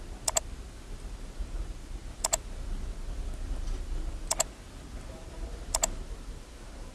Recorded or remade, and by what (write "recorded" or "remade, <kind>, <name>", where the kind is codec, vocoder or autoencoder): recorded